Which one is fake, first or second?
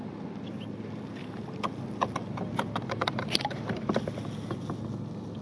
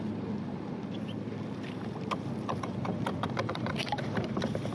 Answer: second